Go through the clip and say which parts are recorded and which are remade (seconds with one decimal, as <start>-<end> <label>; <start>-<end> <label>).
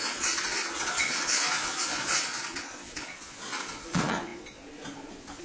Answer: 0.0-5.4 remade